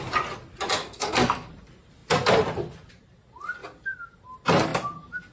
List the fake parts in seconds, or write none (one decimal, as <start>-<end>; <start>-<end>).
0.8-1.5